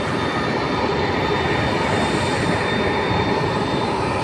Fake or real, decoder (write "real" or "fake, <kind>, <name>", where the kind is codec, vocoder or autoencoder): real